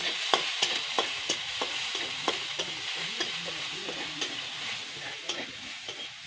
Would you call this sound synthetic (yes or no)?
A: yes